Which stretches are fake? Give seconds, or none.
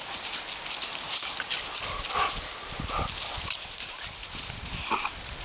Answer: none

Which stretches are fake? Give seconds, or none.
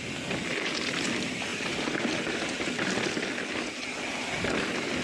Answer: none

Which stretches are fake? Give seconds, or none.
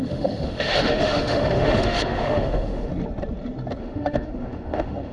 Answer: 0.0-2.9; 3.8-5.1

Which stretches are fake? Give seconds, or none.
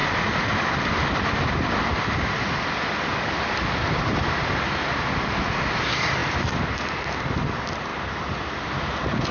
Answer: none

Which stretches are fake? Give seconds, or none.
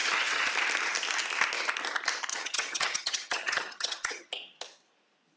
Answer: 0.0-0.5; 2.3-4.3